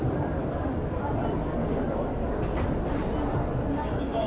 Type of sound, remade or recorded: remade